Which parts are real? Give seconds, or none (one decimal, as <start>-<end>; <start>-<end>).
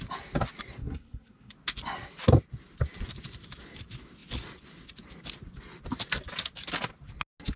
0.0-0.8; 1.5-7.6